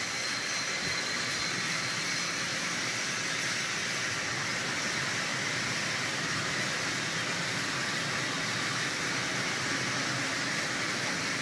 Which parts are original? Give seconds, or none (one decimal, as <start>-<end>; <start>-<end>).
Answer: 0.0-11.4

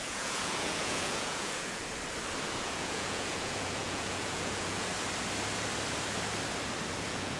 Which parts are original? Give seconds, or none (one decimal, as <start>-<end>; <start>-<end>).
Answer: 1.8-2.6; 4.9-6.9